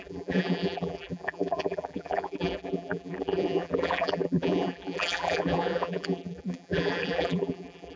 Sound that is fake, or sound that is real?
fake